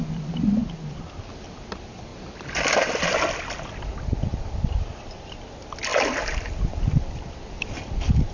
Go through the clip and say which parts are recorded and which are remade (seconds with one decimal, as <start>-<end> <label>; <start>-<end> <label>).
0.0-0.6 remade; 0.6-1.3 recorded; 1.3-2.1 remade; 2.1-4.4 recorded; 4.4-5.9 remade; 5.9-6.5 recorded; 6.5-8.3 remade